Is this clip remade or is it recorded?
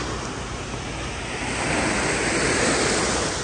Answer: recorded